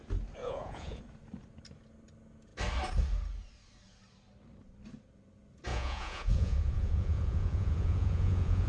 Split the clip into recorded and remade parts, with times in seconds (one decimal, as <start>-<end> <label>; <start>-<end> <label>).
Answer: 0.0-0.4 recorded; 0.4-1.0 remade; 1.0-5.7 recorded; 5.7-8.7 remade